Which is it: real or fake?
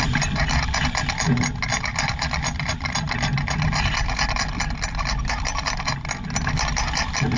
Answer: real